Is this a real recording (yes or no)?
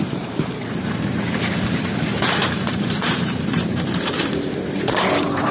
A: no